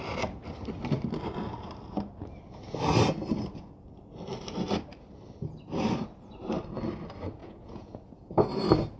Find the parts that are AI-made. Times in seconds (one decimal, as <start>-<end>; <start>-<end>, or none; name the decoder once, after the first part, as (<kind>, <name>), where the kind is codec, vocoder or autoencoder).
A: 7.4-8.3 (vocoder, Vocos)